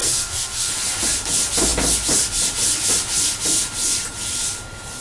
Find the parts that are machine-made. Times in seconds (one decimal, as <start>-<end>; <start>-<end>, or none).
0.0-0.7